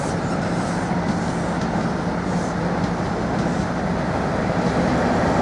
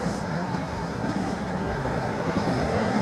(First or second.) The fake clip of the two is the second